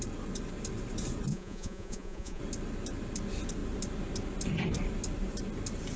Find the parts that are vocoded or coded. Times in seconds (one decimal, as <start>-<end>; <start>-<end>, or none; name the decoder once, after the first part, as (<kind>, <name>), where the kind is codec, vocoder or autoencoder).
1.3-2.4 (vocoder, Vocos)